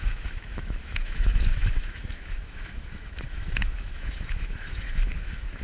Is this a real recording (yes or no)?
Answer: no